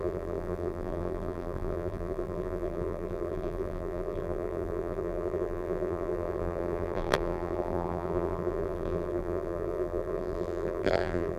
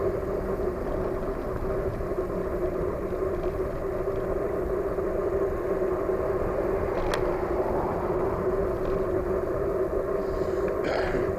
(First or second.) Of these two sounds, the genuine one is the second